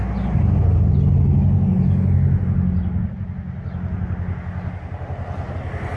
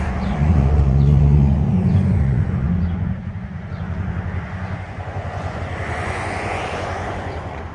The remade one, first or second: second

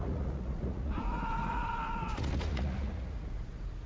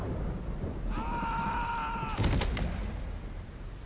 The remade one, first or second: first